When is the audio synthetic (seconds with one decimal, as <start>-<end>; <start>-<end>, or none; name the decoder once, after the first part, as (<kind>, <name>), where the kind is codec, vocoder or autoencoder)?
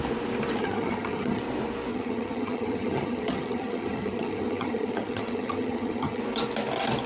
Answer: 0.6-1.4 (vocoder, HiFi-GAN); 1.9-6.2